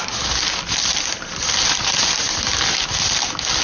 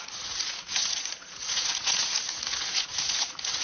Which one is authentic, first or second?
first